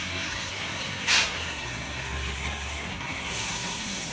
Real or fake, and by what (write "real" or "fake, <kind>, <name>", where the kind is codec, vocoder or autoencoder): fake, codec, SNAC